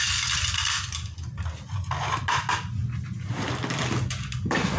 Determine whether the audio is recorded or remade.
recorded